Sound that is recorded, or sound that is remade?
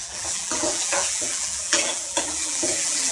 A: remade